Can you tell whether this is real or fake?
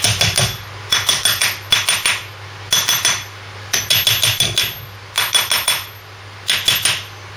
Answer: real